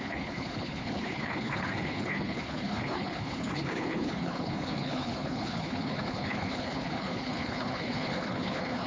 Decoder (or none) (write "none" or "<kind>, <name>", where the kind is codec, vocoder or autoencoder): codec, HILCodec